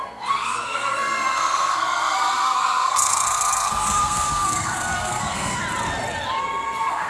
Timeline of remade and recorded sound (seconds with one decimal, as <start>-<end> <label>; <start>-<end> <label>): 0.0-5.6 remade; 5.6-6.4 recorded; 6.4-7.1 remade